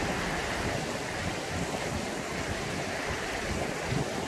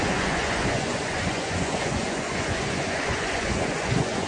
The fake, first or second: second